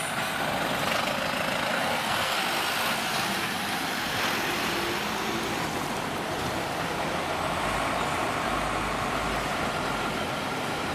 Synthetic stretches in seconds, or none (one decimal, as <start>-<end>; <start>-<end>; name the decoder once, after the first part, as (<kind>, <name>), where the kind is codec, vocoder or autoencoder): 1.7-2.4 (codec, SNAC)